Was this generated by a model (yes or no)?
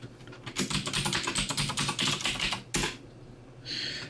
no